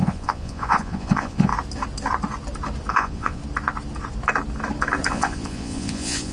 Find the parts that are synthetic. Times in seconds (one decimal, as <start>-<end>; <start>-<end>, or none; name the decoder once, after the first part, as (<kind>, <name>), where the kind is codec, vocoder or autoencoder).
0.0-1.5 (vocoder, Vocos); 2.9-3.4; 5.1-6.3